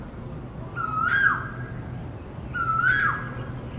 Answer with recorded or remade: recorded